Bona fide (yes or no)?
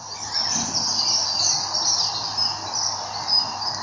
yes